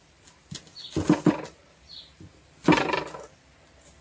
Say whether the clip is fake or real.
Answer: real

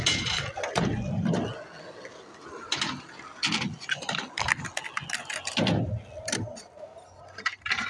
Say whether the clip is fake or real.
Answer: real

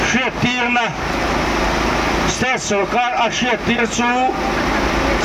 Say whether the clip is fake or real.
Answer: real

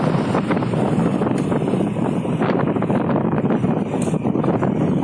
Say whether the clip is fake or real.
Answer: real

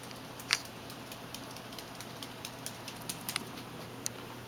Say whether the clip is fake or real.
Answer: fake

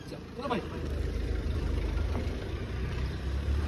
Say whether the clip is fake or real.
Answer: fake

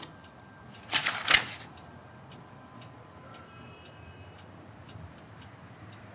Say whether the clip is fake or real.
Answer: fake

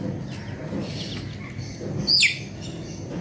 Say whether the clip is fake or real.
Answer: real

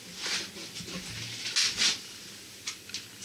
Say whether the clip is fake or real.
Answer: real